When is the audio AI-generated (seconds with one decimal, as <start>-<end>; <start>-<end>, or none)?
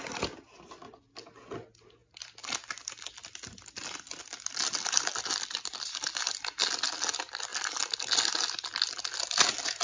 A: none